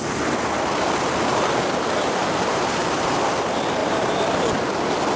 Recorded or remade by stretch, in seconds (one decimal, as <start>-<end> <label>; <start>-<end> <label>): 0.0-1.3 recorded; 1.3-3.2 remade; 3.2-3.8 recorded; 3.8-4.5 remade; 4.5-5.2 recorded